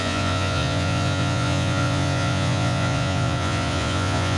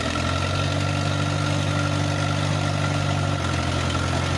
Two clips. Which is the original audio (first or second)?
second